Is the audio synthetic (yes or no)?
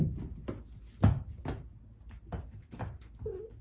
no